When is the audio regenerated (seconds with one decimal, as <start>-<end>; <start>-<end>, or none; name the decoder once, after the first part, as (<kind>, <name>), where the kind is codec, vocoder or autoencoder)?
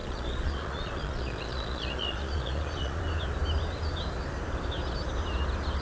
0.0-3.0 (vocoder, Vocos)